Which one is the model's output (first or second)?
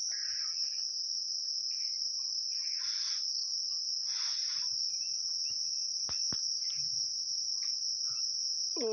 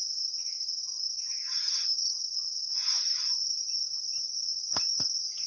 second